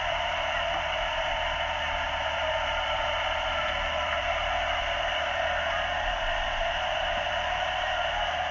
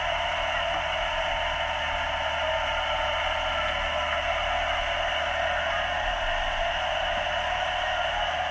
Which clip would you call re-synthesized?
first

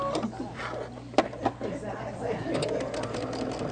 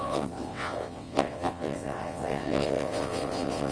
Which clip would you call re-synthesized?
second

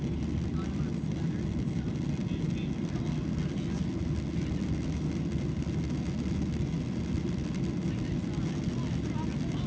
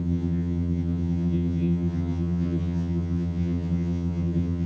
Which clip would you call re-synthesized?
second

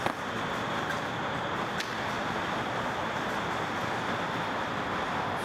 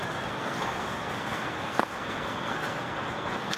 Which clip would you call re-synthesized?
second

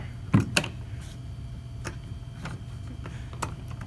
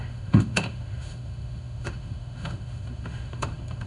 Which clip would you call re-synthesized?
second